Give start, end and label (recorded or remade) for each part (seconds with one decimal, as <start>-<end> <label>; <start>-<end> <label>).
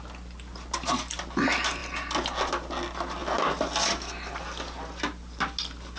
0.0-6.0 recorded